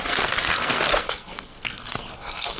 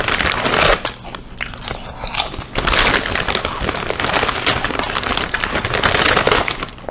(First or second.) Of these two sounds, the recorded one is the second